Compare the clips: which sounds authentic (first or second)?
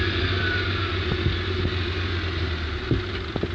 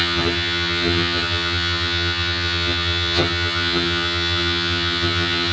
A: first